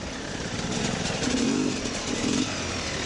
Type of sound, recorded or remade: remade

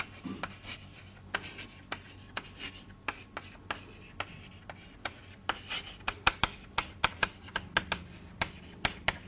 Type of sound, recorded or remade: recorded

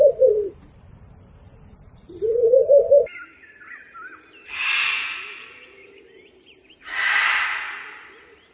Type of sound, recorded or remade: remade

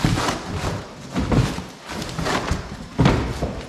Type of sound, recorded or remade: recorded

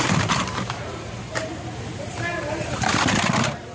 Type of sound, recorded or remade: remade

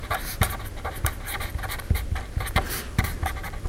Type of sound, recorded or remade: recorded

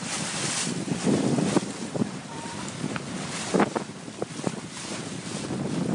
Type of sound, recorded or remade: remade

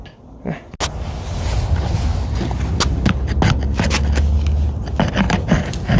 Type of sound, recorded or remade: recorded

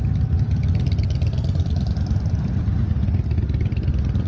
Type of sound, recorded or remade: recorded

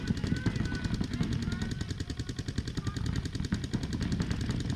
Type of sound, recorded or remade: recorded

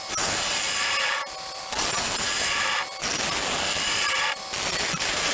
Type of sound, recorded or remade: recorded